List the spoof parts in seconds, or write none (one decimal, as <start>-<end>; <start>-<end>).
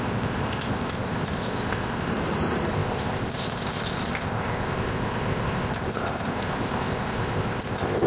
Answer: 0.0-2.1; 2.7-8.1